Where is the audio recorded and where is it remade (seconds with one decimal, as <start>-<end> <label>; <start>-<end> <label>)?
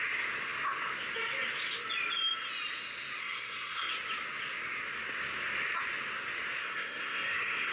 0.0-3.2 recorded; 3.2-3.9 remade; 3.9-6.6 recorded; 6.6-7.7 remade